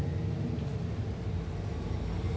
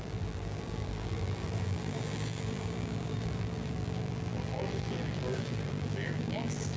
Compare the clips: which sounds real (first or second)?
first